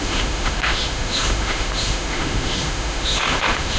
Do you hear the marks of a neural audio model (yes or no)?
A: yes